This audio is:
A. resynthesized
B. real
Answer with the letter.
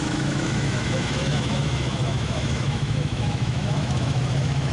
A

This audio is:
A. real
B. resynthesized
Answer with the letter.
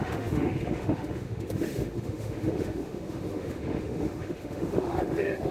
B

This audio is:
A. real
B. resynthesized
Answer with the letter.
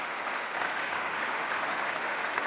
B